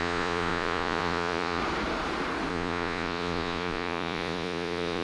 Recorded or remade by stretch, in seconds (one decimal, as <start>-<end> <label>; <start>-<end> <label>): 0.0-1.6 remade; 1.6-2.5 recorded; 2.5-5.0 remade